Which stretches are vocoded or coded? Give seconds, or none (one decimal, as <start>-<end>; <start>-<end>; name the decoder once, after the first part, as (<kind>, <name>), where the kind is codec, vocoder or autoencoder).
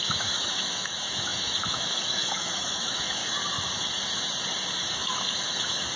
0.0-3.2 (autoencoder, DAC-VAE); 4.8-6.0